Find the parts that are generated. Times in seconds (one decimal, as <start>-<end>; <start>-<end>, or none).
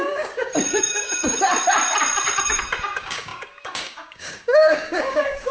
0.0-1.5; 2.5-5.5